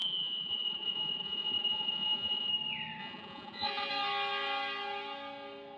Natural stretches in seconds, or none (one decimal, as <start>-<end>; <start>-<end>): 2.5-3.0; 3.9-5.8